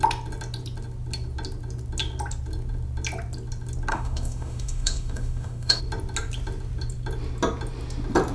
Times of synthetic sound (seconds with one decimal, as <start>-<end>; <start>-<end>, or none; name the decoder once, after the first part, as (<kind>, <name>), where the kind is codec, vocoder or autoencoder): 3.9-5.8 (autoencoder, DAC-VAE)